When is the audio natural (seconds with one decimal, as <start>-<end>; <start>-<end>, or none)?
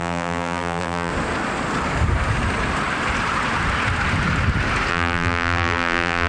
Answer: 1.1-4.9